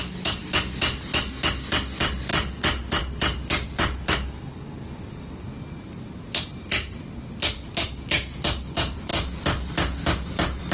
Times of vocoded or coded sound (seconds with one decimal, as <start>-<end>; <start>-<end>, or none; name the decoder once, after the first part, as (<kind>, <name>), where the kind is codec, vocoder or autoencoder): 0.0-1.1 (vocoder, BigVGAN v2); 1.7-10.7

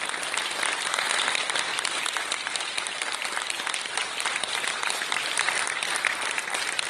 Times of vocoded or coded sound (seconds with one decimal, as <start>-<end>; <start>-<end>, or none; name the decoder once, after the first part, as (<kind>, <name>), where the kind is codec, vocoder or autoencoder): 1.7-5.5 (vocoder, BigVGAN v2)

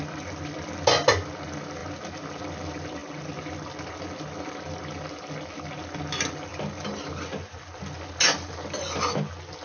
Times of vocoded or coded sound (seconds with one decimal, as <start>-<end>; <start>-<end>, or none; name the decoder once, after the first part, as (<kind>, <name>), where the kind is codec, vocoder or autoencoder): 6.5-7.1 (vocoder, BigVGAN v2)

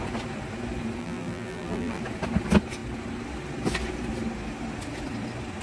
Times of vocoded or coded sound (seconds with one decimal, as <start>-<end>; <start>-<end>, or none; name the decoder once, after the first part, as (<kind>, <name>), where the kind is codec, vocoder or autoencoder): 1.0-2.0 (vocoder, BigVGAN v2)